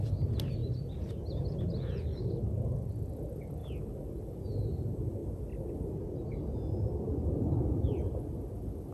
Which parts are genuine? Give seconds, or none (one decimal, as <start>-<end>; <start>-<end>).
0.0-8.9